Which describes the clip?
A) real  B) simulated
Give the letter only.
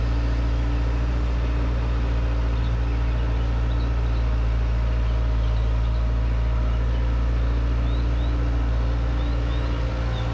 A